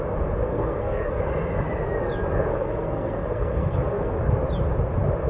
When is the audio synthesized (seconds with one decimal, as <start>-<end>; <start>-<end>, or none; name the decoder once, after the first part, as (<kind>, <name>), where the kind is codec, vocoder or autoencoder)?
0.5-1.2 (codec, SNAC); 2.5-4.2